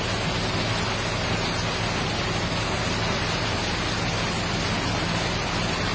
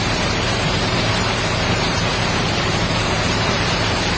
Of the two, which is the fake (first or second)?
second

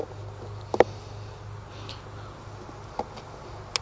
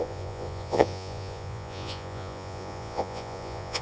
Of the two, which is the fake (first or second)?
second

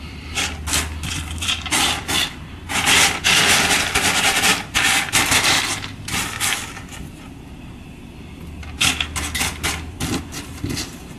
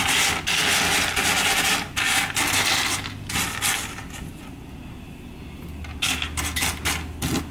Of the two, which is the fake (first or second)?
first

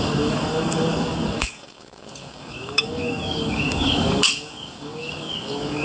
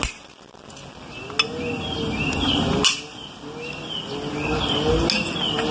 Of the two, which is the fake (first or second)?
first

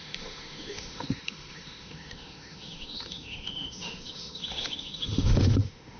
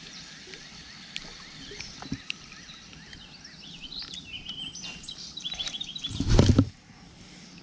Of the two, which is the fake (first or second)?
first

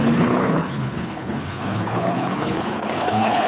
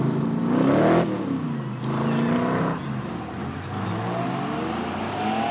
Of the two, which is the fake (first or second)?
first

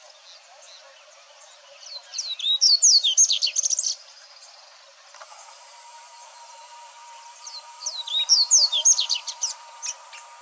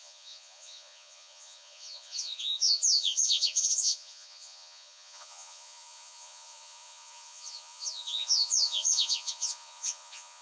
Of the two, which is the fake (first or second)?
second